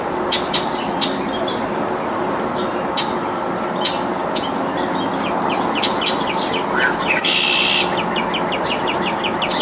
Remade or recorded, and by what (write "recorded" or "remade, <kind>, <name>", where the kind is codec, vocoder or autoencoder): recorded